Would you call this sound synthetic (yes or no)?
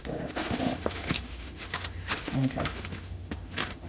yes